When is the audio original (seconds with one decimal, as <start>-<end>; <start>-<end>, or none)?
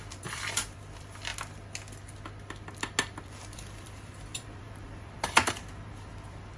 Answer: 1.3-3.2